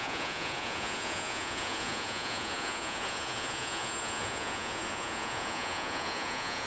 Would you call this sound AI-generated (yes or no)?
yes